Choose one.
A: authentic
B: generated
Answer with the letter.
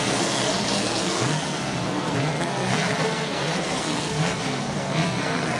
B